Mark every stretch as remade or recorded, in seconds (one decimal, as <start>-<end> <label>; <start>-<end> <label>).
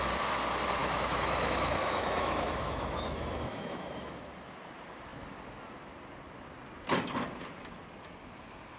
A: 0.0-0.8 recorded; 0.8-4.2 remade; 4.2-8.8 recorded